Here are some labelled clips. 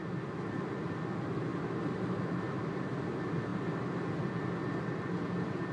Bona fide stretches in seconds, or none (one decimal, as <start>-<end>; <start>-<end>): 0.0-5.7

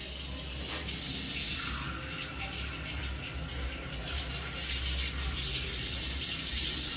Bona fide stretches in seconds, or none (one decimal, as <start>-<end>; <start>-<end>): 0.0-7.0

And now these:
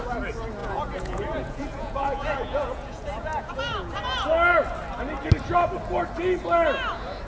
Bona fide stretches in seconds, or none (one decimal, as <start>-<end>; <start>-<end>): 0.0-0.6; 4.0-7.3

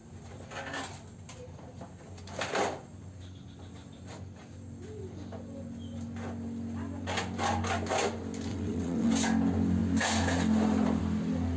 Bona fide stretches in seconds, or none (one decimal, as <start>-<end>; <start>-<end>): 0.0-8.5; 9.1-11.6

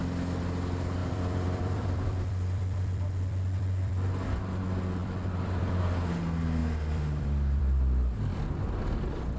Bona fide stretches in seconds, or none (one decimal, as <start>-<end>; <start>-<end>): 0.0-1.0; 3.9-5.0; 5.8-6.6; 7.6-9.4